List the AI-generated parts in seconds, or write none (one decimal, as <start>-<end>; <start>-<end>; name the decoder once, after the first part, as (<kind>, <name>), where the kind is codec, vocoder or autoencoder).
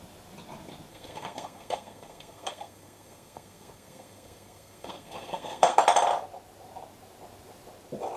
0.9-5.8 (codec, SNAC)